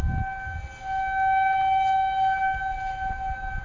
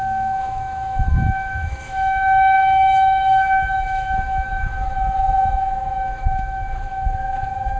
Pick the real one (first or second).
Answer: first